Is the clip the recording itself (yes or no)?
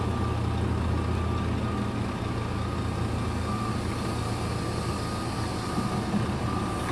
yes